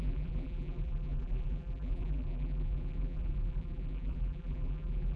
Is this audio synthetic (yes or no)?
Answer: yes